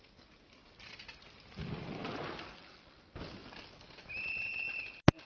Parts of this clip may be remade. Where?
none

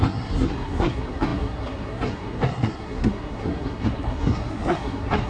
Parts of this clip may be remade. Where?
0.0-5.3 (codec, SNAC)

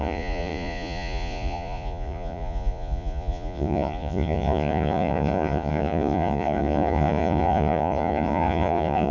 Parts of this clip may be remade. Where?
0.0-9.1 (vocoder, Vocos)

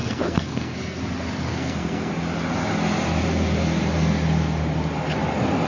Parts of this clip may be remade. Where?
0.0-1.0 (codec, SNAC); 1.5-2.1

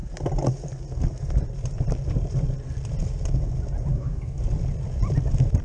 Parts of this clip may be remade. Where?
3.9-4.4 (codec, DAC)

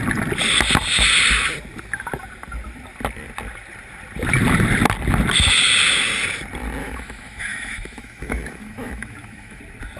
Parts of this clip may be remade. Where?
6.8-9.6 (autoencoder, DAC-VAE)

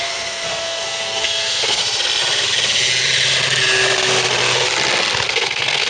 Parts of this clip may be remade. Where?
0.0-1.8 (codec, SNAC); 5.3-5.9

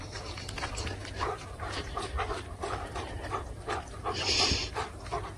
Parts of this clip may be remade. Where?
0.0-5.4 (vocoder, BigVGAN v2)